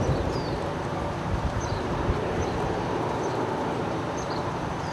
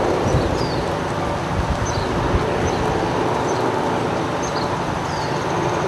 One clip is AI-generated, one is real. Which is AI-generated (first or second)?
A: first